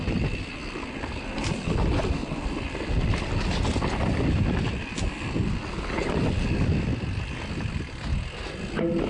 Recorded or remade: recorded